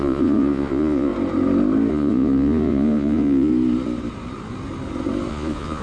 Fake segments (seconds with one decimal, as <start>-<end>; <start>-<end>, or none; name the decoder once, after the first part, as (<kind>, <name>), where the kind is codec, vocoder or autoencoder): 0.0-1.1 (vocoder, Vocos); 1.9-3.5; 5.3-5.8